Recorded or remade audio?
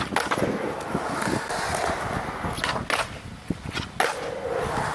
recorded